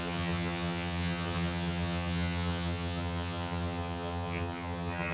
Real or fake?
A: fake